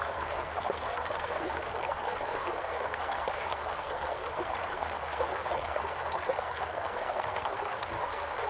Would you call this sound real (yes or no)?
no